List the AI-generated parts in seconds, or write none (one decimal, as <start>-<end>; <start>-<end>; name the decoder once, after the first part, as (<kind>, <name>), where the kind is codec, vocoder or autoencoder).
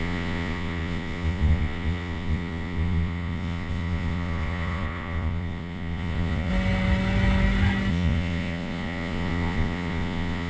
0.0-6.5 (vocoder, Vocos); 7.9-10.5